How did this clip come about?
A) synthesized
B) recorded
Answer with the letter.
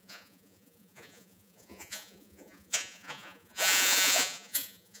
A